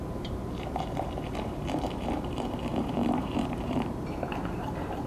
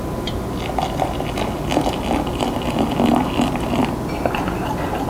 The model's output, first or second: first